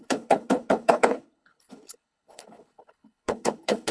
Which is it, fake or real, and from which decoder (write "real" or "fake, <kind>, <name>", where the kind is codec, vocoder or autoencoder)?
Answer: fake, codec, HILCodec